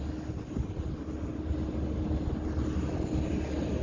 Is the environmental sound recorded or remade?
recorded